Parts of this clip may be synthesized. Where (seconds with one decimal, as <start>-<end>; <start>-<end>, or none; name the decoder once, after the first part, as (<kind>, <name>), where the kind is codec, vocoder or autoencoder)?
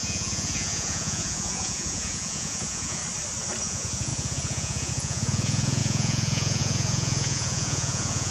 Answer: 0.0-3.0 (vocoder, Vocos); 3.6-8.3